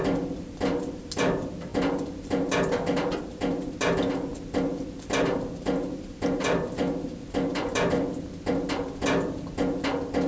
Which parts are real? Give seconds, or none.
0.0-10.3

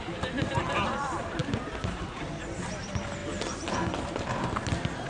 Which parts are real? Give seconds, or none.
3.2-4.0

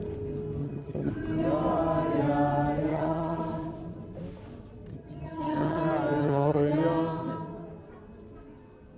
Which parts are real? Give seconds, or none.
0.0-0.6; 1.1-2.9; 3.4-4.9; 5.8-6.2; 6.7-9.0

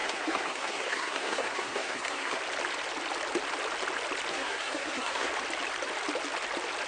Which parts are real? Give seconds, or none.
2.4-4.3; 5.3-6.9

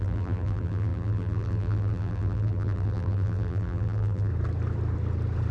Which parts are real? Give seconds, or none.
4.3-5.5

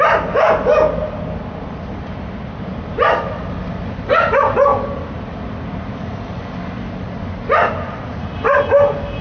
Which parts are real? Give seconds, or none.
0.0-9.2

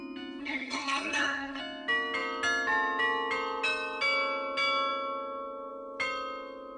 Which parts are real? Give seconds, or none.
0.0-0.4; 1.6-6.8